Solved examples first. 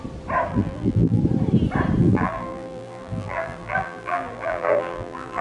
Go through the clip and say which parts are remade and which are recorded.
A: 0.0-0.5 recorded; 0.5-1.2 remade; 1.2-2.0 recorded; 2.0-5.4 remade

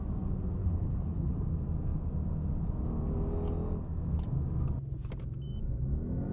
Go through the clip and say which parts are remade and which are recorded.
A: 0.0-0.6 recorded; 0.6-1.3 remade; 1.3-6.3 recorded